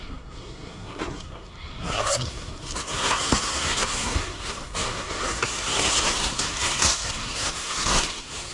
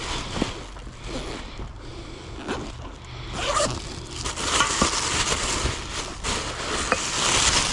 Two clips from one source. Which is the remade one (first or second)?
first